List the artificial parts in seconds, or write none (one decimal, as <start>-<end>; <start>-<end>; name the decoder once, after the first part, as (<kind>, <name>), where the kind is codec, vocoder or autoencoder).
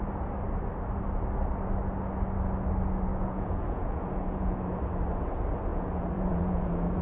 3.1-4.6 (vocoder, Vocos); 5.7-7.0